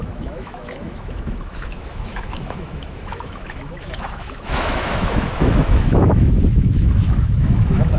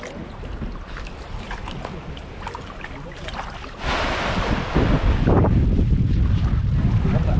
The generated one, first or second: first